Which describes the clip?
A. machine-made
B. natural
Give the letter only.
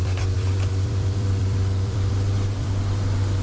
A